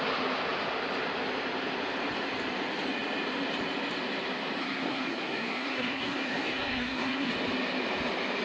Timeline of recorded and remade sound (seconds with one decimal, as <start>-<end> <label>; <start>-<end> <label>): 0.0-4.6 recorded; 4.6-7.3 remade; 7.3-8.4 recorded